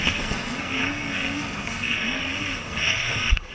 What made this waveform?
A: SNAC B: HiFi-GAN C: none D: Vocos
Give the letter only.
A